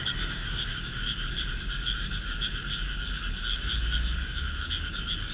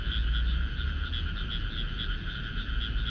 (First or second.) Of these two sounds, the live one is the second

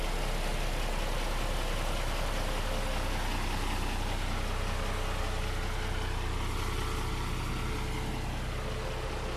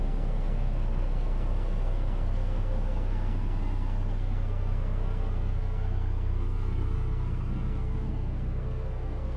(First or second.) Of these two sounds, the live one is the first